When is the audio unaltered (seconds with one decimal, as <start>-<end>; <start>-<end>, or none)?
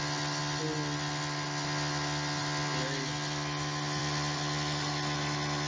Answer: 0.0-5.7